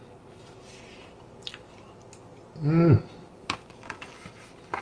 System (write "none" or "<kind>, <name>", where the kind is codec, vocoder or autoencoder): none